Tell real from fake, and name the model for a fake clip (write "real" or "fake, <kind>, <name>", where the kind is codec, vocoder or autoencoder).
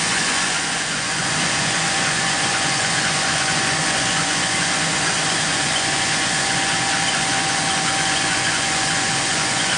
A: fake, vocoder, Vocos